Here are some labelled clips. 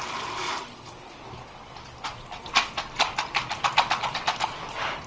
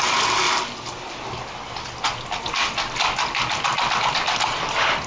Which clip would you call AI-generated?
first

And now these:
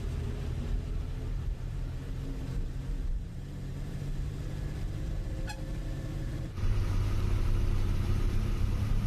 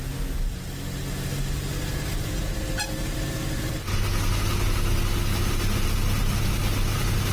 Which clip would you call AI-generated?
first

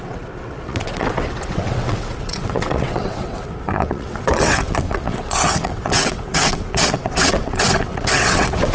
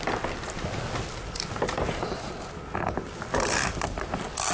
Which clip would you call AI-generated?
first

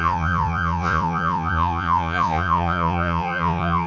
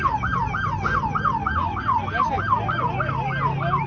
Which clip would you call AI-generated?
first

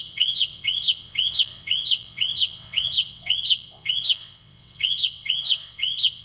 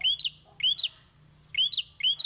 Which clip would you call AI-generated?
first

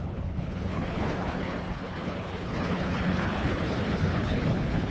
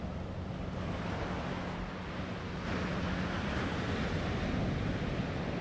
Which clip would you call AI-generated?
first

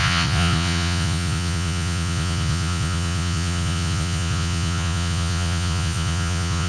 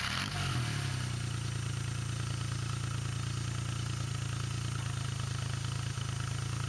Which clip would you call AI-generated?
first